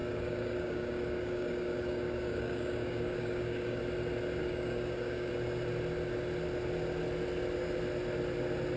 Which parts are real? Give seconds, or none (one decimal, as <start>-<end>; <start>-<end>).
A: 3.8-4.4; 5.3-8.8